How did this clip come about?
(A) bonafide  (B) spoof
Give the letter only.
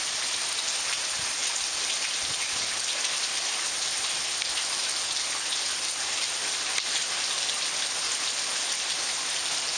A